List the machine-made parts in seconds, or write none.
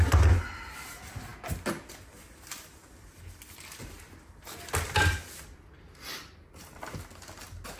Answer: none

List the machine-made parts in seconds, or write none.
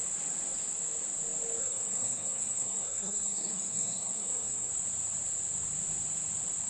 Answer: 1.6-4.7 (codec, SNAC)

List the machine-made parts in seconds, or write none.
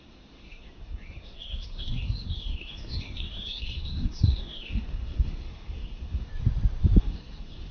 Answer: 0.0-6.3 (codec, SNAC); 7.0-7.7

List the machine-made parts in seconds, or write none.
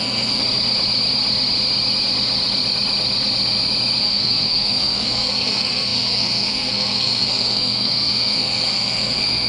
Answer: 0.0-0.4 (codec, SNAC); 4.0-9.5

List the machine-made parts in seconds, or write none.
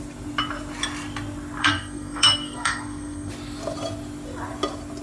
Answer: 1.6-3.3 (codec, SNAC)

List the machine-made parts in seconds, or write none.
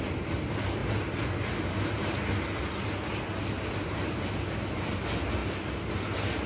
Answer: none